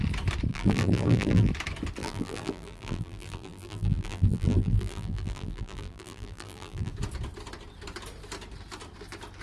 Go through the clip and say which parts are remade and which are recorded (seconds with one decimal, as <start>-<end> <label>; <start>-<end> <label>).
0.0-0.5 recorded; 0.5-1.5 remade; 1.5-2.0 recorded; 2.0-6.9 remade; 6.9-9.4 recorded